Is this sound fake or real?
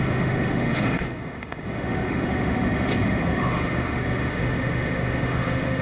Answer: fake